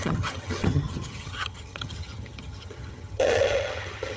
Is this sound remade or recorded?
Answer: remade